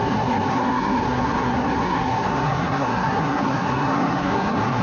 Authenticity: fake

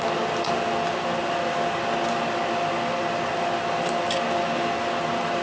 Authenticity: real